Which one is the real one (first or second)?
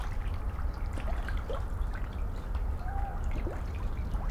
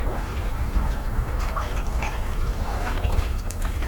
first